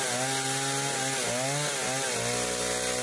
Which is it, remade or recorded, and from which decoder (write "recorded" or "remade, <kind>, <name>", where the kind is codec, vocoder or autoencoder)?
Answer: recorded